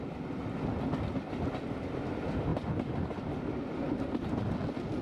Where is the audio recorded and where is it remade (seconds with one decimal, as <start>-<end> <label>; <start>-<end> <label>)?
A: 0.0-5.0 recorded